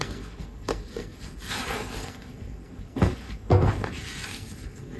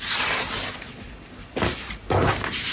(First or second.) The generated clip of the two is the first